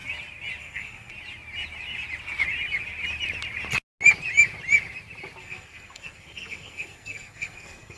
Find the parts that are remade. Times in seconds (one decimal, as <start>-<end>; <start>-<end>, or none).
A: 0.6-1.1; 5.4-8.0